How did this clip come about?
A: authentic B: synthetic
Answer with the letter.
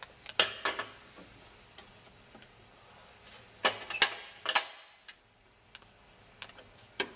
A